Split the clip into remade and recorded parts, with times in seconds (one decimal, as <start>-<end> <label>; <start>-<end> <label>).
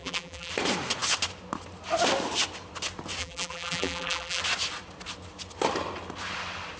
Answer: 0.0-0.5 remade; 0.5-3.2 recorded; 3.2-4.4 remade; 4.4-6.8 recorded